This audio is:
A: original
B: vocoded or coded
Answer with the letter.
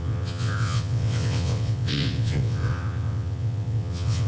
B